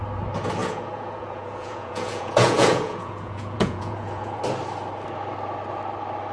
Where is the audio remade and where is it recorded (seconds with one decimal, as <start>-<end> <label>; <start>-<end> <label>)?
0.0-0.6 recorded; 0.6-4.4 remade; 4.4-6.3 recorded